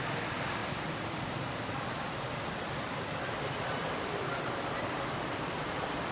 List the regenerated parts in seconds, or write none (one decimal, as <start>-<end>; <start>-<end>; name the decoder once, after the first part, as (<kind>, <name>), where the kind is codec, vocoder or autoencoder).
0.6-2.9 (vocoder, BigVGAN v2); 3.8-5.3